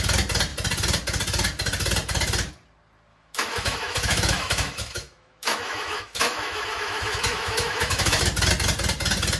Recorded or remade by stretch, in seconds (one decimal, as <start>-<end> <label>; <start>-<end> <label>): 0.0-3.1 recorded; 3.1-8.2 remade; 8.2-9.4 recorded